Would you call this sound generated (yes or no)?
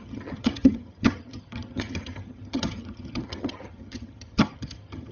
yes